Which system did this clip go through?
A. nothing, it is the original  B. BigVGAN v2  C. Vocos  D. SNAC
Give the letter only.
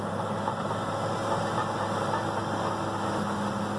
A